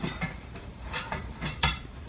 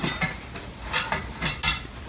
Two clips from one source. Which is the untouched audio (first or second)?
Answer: second